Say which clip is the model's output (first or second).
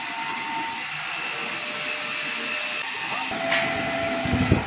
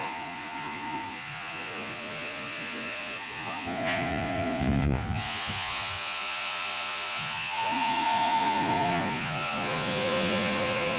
second